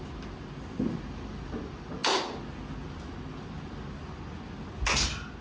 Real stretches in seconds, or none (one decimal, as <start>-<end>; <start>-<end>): 0.0-5.4